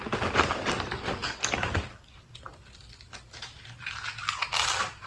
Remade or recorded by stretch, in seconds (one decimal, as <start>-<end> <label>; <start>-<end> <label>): 0.0-5.1 recorded